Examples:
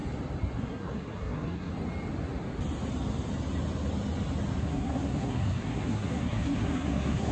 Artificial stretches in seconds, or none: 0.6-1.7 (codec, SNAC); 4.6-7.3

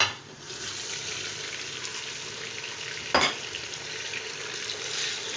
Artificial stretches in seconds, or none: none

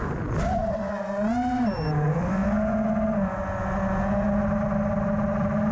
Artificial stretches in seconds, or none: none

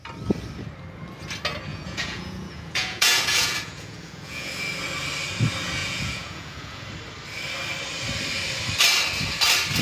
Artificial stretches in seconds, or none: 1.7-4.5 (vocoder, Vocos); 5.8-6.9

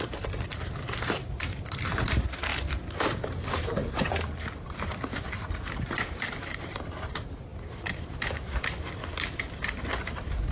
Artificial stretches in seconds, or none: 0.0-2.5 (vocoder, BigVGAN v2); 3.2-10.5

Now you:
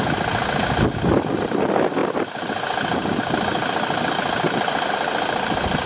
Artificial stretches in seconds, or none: none